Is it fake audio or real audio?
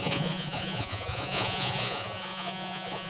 fake